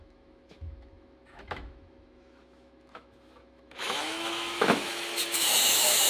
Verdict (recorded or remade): remade